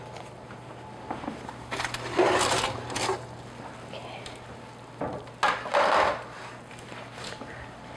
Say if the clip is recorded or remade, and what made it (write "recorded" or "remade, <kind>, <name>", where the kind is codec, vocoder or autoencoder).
recorded